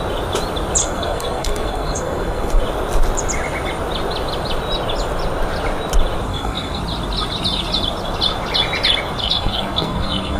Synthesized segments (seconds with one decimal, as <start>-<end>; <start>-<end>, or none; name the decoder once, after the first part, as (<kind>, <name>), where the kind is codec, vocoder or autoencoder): 0.8-2.6 (codec, SNAC); 6.3-6.8; 9.2-10.4

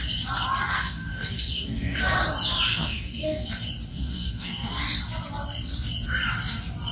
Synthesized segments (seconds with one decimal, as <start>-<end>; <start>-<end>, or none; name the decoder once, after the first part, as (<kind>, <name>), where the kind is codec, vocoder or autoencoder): 0.6-2.0 (codec, SNAC); 2.7-3.5; 3.9-4.7

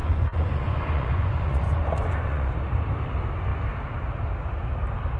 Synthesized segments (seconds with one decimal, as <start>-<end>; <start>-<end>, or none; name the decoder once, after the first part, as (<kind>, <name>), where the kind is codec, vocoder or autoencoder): 0.0-2.5 (vocoder, Vocos)

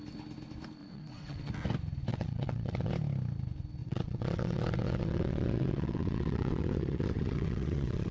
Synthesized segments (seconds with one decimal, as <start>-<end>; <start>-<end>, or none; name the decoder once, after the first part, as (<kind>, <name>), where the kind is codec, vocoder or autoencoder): 0.8-1.5 (vocoder, WaveNeXt); 2.1-2.9; 3.8-8.1

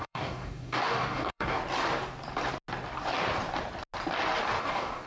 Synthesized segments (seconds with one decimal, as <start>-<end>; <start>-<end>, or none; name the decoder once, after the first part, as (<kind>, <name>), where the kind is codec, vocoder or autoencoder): 0.0-1.6 (codec, DAC); 4.6-5.1

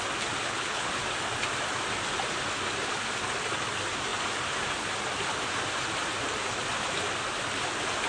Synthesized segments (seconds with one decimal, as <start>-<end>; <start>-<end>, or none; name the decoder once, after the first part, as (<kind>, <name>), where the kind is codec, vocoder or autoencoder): 0.4-0.9 (codec, HILCodec)